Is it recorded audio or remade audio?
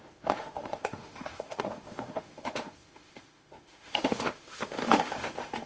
remade